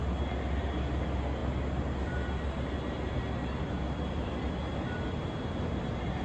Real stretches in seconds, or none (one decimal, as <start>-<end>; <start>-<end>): 0.0-6.2